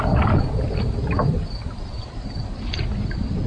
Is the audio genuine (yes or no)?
yes